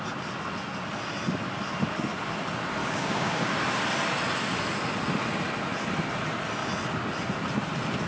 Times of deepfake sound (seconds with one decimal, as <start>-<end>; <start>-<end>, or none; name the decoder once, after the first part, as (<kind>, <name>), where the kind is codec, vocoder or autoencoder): 2.8-3.5 (codec, DAC)